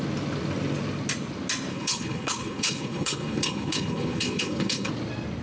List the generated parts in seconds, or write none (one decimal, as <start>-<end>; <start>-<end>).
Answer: 1.7-4.9